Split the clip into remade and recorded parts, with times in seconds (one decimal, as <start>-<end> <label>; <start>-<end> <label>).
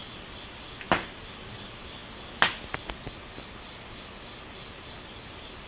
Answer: 0.0-5.7 recorded